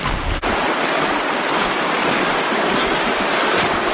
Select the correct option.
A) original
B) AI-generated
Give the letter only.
A